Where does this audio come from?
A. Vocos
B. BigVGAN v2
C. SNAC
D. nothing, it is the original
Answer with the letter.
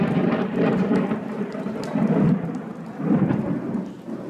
D